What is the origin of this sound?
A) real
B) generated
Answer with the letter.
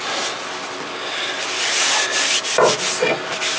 A